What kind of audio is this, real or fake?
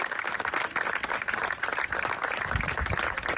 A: real